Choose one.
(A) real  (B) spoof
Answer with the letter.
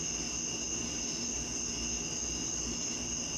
A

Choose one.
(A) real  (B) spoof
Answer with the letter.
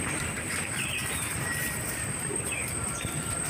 B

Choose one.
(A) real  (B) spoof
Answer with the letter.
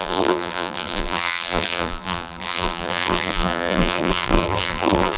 B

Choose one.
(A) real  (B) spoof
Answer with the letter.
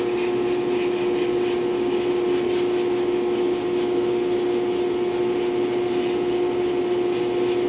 A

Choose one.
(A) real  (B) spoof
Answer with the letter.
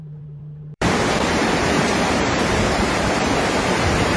B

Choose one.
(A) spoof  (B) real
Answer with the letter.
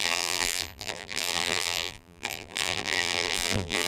A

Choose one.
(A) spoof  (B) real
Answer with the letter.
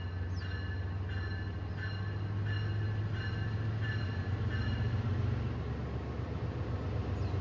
B